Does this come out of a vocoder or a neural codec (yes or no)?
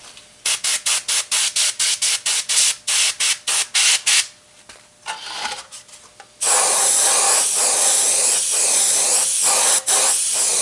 no